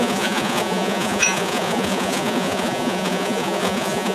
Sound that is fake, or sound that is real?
fake